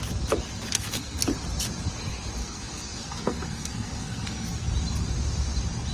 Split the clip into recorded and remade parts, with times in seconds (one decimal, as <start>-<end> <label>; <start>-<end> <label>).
0.0-0.7 recorded; 0.7-1.2 remade; 1.2-2.4 recorded; 2.4-4.7 remade; 4.7-5.9 recorded